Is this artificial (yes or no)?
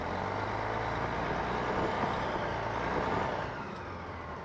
no